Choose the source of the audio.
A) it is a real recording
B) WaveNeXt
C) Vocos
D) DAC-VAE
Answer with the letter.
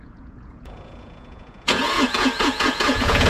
C